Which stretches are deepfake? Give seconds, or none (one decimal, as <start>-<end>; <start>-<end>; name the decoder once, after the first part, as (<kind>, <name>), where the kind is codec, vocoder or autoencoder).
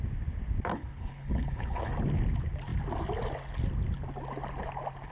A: 0.7-1.9 (codec, HILCodec)